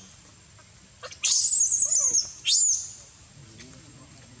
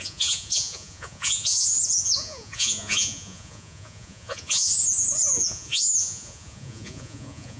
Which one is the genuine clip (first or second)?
first